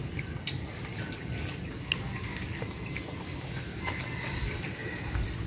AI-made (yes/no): no